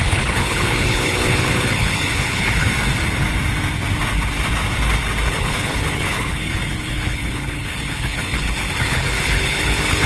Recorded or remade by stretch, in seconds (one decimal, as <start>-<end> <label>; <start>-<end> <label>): 0.0-2.7 remade; 2.7-5.3 recorded; 5.3-10.1 remade